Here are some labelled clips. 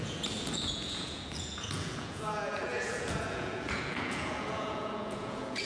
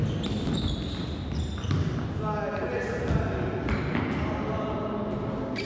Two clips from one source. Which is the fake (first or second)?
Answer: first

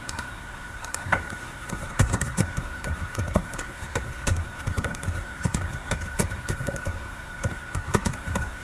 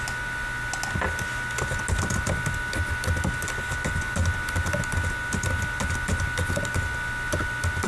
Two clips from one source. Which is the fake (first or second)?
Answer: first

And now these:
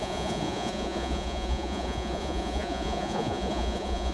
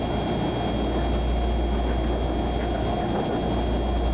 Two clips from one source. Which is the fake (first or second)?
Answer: first